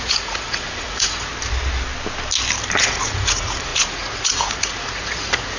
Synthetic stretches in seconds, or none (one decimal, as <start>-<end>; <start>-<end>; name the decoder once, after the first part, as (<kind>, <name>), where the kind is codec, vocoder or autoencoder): 0.0-1.3 (vocoder, Vocos); 2.8-5.6